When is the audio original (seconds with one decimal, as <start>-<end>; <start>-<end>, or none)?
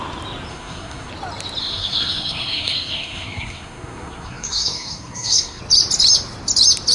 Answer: 0.0-0.5; 1.1-1.6; 5.6-6.9